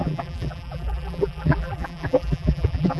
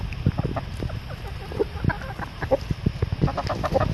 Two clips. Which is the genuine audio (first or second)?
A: second